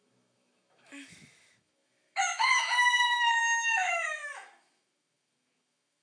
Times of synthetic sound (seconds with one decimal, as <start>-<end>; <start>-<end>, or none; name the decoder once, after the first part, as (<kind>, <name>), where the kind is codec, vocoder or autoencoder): 0.0-6.0 (autoencoder, DAC-VAE)